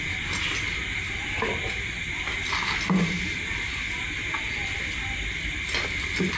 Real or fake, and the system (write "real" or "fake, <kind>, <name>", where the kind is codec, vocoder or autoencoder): real